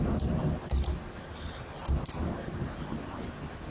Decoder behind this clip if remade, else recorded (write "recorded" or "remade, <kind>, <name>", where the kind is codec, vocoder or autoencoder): recorded